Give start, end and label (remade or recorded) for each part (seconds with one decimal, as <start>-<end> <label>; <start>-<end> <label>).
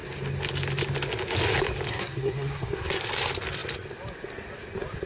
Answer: 0.0-1.9 recorded; 1.9-2.9 remade; 2.9-5.1 recorded